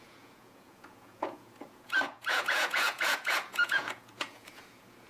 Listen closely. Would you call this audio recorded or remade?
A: remade